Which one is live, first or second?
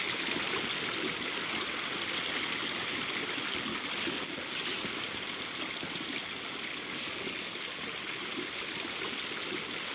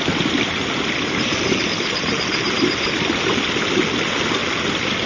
first